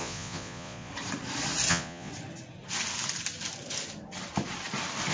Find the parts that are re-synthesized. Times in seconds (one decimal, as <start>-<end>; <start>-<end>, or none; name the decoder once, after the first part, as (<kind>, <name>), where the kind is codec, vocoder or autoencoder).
0.0-0.9 (vocoder, Vocos); 1.7-2.1